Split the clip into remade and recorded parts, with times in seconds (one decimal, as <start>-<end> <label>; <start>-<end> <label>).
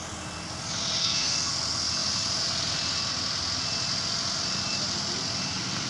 0.0-1.0 recorded; 1.0-1.5 remade; 1.5-5.9 recorded